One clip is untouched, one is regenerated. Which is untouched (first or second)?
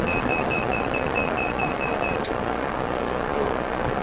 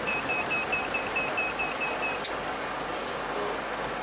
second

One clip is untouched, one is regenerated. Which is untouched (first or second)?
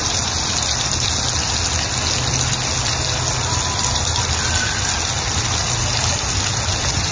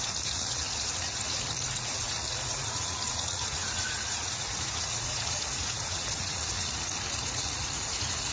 first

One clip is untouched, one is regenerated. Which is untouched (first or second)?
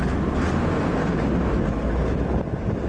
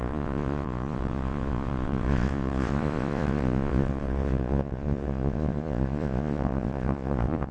first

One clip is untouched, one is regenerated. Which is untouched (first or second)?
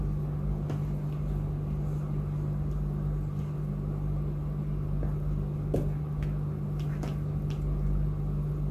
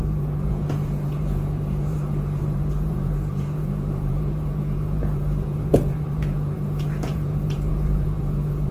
first